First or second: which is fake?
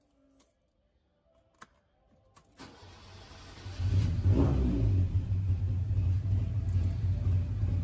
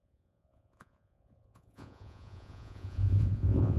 second